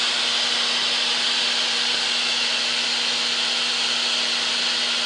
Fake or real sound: real